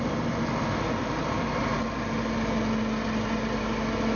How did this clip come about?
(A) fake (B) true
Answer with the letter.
B